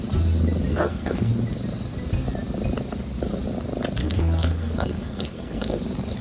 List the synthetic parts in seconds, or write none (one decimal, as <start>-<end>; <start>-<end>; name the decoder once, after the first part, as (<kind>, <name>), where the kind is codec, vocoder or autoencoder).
0.7-1.3 (codec, SNAC); 4.0-5.8